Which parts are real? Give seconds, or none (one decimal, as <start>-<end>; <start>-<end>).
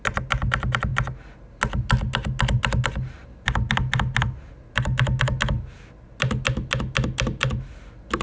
0.0-8.2